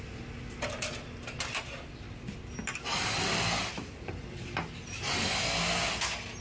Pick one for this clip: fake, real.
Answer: real